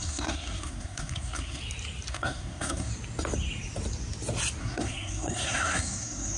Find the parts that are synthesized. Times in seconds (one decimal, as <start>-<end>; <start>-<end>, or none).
0.0-1.6; 2.1-2.9; 4.6-6.4